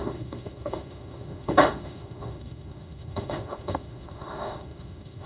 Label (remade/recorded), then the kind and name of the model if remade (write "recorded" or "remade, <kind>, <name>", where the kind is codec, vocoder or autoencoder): remade, autoencoder, DAC-VAE